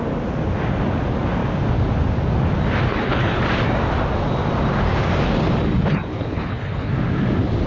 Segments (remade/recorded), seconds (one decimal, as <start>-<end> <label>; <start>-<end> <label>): 0.0-2.9 recorded; 2.9-3.4 remade; 3.4-6.1 recorded; 6.1-6.9 remade; 6.9-7.7 recorded